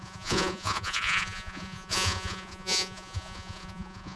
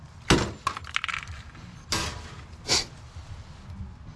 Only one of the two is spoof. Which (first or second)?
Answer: first